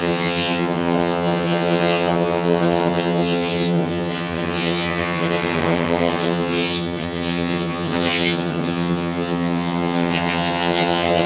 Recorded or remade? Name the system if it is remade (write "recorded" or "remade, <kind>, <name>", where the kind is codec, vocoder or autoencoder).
remade, vocoder, HiFi-GAN